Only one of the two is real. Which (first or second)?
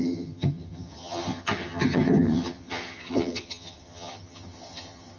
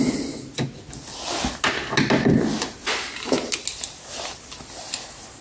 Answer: second